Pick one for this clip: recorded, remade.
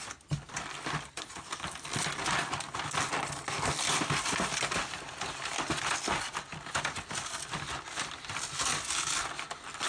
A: recorded